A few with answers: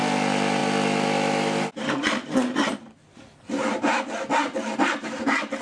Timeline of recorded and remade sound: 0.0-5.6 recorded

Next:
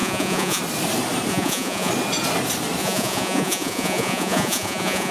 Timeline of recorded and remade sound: 0.0-0.6 remade; 0.6-1.3 recorded; 1.3-1.9 remade; 1.9-2.8 recorded; 2.8-5.1 remade

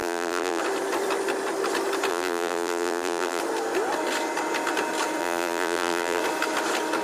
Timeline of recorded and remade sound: 0.0-0.6 remade; 0.6-2.1 recorded; 2.1-3.4 remade; 3.4-5.2 recorded; 5.2-6.2 remade; 6.2-7.0 recorded

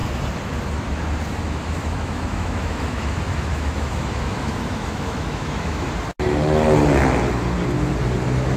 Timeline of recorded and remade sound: 0.0-1.4 recorded; 1.4-5.9 remade; 5.9-8.6 recorded

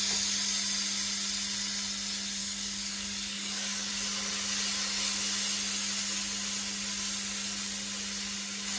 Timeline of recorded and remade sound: 0.0-2.4 recorded; 2.4-3.9 remade; 3.9-8.8 recorded

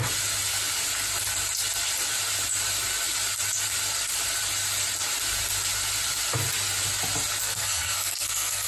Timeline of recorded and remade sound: 0.0-7.4 recorded; 7.4-8.7 remade

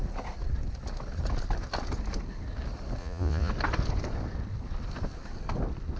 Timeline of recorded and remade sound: 0.0-3.0 recorded; 3.0-3.5 remade; 3.5-6.0 recorded